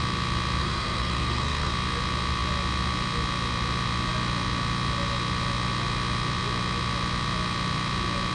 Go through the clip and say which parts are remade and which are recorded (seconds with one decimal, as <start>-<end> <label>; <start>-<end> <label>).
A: 0.0-0.6 recorded; 0.6-1.7 remade; 1.7-8.3 recorded